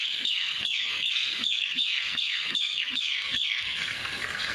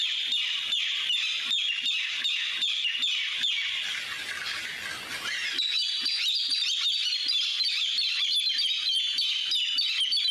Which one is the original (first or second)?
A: second